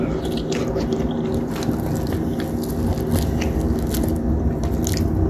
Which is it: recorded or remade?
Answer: recorded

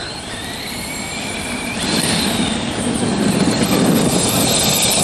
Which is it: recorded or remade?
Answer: recorded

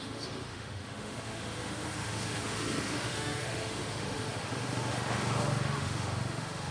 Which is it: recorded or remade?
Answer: remade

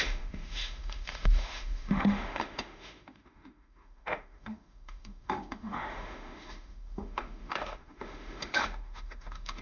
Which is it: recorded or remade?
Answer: remade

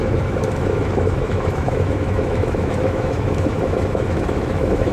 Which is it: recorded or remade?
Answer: remade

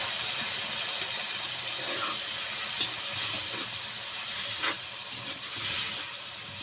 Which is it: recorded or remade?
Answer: recorded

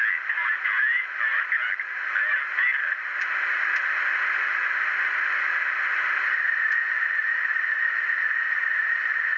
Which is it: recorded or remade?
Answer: recorded